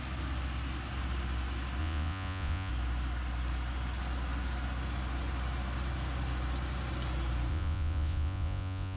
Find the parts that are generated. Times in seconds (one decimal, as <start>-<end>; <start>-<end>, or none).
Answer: 1.8-2.7; 7.5-9.0

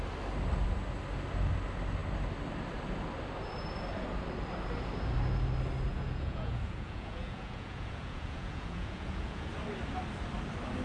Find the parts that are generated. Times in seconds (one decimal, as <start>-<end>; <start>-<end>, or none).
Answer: 5.9-9.5

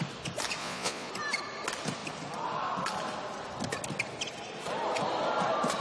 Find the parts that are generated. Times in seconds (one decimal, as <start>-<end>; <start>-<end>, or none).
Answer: 0.6-1.1

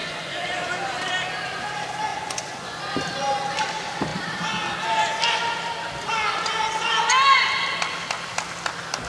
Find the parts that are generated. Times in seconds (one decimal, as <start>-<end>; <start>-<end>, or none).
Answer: 0.0-0.5; 2.1-2.8

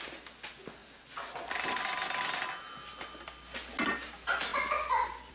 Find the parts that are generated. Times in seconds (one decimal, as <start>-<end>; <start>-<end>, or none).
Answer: none

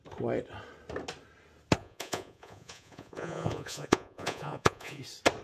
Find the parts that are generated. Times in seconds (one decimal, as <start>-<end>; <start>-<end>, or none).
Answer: 1.8-5.0

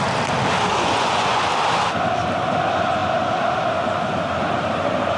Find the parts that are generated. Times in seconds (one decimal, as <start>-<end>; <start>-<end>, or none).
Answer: 0.7-1.4

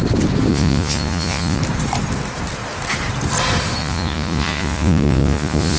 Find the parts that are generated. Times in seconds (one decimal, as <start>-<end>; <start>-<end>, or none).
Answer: 0.5-1.6; 3.8-5.8